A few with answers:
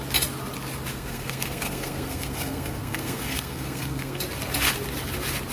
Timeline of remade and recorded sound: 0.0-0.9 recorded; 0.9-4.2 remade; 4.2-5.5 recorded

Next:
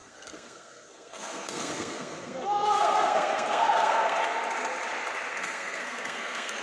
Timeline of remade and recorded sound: 0.0-4.2 remade; 4.2-5.3 recorded; 5.3-6.6 remade

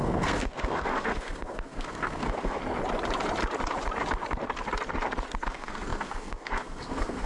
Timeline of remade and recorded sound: 0.0-2.6 remade; 2.6-5.5 recorded; 5.5-7.3 remade

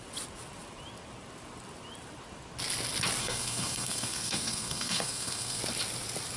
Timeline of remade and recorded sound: 0.0-3.2 recorded; 3.2-5.6 remade; 5.6-6.4 recorded

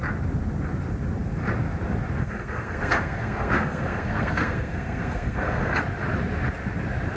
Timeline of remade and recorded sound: 0.0-2.2 recorded; 2.2-5.8 remade; 5.8-7.2 recorded

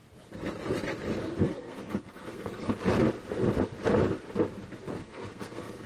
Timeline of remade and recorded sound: 0.0-1.4 recorded; 1.4-2.7 remade; 2.7-5.0 recorded; 5.0-5.9 remade

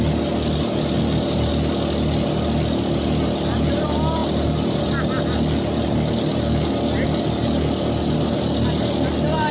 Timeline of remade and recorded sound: 0.0-9.5 recorded